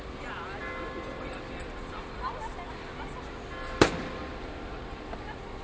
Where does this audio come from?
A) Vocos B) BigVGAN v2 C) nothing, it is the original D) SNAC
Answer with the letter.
C